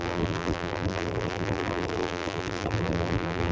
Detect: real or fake fake